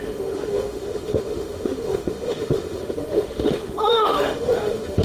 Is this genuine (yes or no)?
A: no